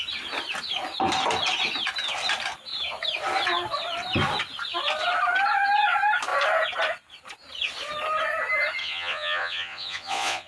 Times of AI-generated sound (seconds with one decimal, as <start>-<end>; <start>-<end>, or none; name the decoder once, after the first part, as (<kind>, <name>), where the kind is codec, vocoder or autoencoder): 8.8-10.5 (vocoder, Vocos)